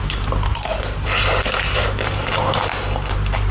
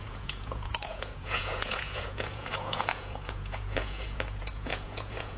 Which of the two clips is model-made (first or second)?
second